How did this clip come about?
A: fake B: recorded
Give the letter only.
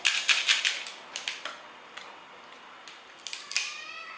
B